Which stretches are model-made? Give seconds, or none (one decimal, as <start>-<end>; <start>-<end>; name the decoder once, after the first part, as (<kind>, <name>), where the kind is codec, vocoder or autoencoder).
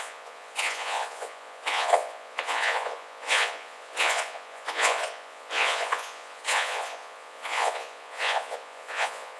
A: 0.0-9.4 (vocoder, Vocos)